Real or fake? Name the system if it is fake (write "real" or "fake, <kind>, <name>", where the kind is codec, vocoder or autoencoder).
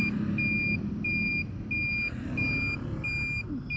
real